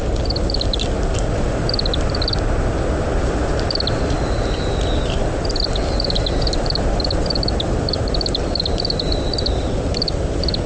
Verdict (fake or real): real